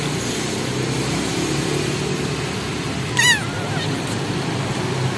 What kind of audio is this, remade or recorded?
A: recorded